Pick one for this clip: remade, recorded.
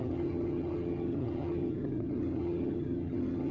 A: remade